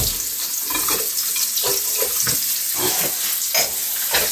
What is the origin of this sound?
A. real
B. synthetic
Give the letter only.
A